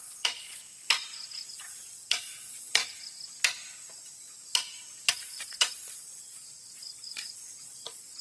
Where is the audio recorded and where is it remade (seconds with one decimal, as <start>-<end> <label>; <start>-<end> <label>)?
0.0-0.6 remade; 0.6-1.5 recorded; 1.5-2.8 remade; 2.8-5.1 recorded; 5.1-8.2 remade